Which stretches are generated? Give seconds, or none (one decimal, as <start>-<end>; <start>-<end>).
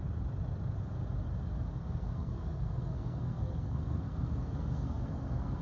1.8-5.6